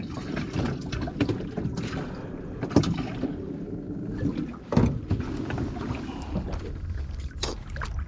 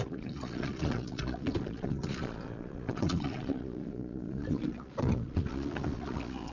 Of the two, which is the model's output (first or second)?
second